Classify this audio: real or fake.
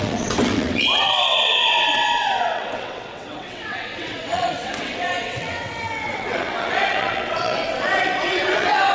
fake